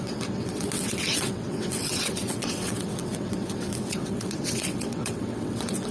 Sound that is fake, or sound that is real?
fake